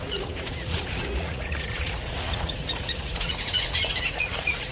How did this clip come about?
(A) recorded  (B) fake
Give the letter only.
B